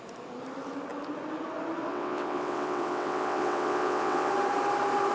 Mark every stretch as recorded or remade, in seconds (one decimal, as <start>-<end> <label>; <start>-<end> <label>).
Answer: 0.0-1.9 recorded; 1.9-4.3 remade; 4.3-5.1 recorded